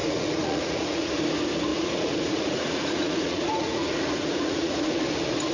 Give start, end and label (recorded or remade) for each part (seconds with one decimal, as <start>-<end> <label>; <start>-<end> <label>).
0.0-1.1 remade; 1.1-1.7 recorded; 1.7-5.0 remade; 5.0-5.5 recorded